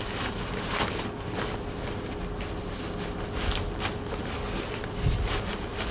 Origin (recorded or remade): recorded